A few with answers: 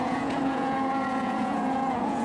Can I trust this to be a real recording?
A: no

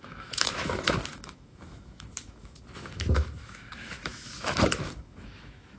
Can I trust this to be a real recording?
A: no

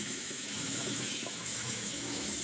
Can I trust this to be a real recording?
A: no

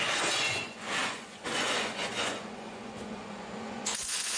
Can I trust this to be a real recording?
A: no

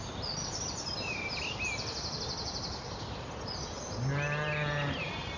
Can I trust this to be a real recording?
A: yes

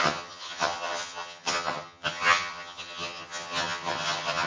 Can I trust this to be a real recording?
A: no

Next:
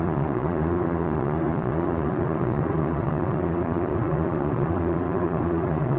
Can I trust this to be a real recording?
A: no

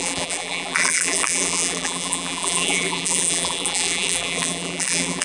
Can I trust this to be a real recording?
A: no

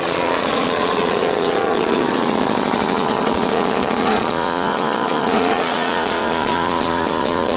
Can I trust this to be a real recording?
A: no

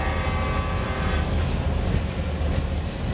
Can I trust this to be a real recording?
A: yes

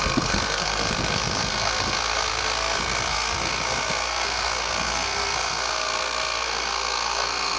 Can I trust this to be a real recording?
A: no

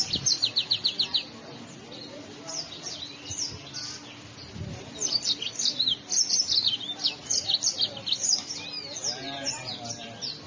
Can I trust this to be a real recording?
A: yes